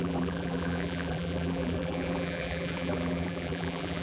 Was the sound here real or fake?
fake